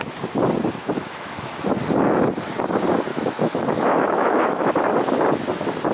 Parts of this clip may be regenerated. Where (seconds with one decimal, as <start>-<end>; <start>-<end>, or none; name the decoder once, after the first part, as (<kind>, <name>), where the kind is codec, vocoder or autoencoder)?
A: 0.8-1.7 (autoencoder, DAC-VAE); 3.1-4.7